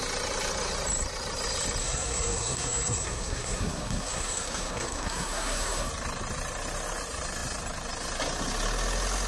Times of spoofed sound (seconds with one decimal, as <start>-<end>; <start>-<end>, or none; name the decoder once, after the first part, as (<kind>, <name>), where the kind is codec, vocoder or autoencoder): 1.8-5.9 (codec, SNAC)